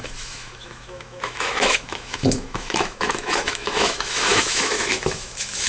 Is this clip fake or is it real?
fake